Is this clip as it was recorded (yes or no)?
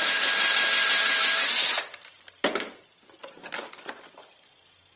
yes